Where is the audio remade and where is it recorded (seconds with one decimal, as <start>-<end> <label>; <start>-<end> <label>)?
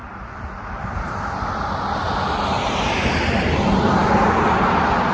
0.0-5.1 recorded